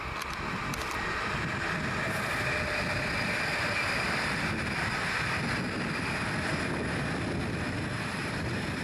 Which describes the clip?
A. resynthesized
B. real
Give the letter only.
A